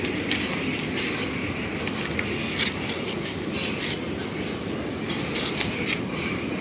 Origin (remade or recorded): recorded